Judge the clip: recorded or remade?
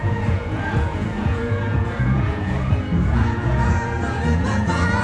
remade